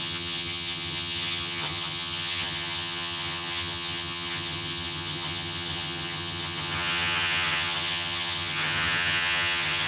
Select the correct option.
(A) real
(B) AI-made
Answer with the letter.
B